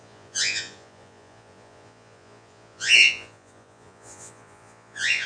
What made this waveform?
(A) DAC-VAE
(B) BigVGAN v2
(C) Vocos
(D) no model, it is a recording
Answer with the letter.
C